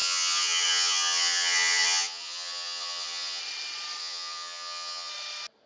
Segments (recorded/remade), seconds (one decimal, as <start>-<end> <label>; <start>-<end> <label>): 0.0-3.4 remade; 3.4-4.0 recorded; 4.0-5.1 remade; 5.1-5.7 recorded